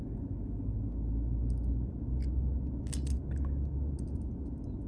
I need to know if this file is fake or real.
real